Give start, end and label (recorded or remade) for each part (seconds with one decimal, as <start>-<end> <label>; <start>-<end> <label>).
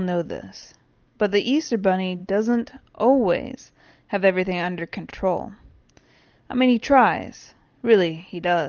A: 0.0-0.6 recorded; 0.6-1.6 remade; 1.6-8.7 recorded